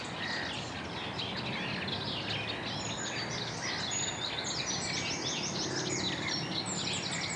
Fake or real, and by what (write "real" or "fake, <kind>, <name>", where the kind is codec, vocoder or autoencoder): real